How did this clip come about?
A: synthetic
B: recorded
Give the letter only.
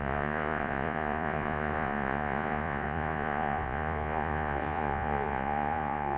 A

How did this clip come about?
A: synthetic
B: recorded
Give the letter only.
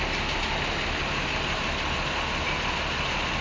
B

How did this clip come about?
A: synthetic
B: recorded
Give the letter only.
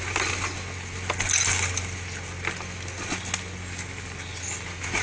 B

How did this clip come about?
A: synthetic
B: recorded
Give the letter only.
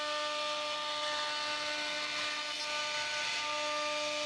B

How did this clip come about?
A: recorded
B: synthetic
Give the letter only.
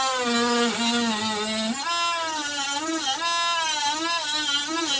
A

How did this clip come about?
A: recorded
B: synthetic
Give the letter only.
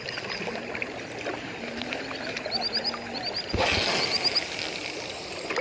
A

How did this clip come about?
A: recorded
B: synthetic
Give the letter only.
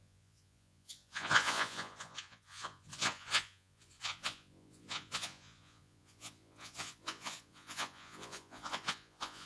B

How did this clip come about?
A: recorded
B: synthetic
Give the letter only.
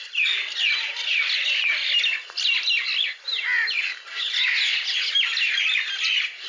A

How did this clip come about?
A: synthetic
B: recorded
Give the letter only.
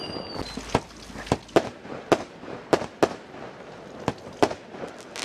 B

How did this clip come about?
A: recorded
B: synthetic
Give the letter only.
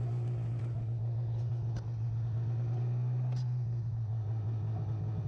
A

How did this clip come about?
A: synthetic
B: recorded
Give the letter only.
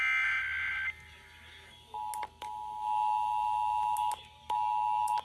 B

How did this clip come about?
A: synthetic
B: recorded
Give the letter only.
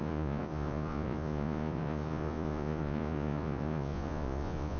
A